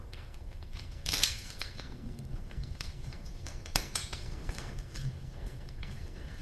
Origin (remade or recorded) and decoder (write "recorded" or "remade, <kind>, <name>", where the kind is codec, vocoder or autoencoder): remade, codec, SNAC